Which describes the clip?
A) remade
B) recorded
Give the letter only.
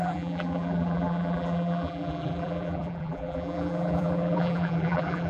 A